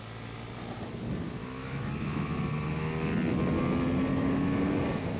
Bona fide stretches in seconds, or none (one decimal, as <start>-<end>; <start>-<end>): 0.0-1.4; 1.9-4.1; 4.7-5.2